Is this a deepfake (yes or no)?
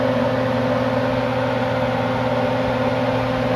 no